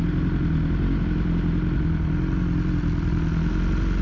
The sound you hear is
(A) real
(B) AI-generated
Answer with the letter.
A